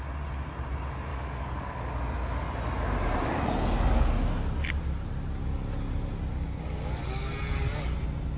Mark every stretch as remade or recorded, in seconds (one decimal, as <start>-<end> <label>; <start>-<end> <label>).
0.0-1.1 recorded; 1.1-1.9 remade; 1.9-6.3 recorded; 6.3-7.3 remade; 7.3-8.4 recorded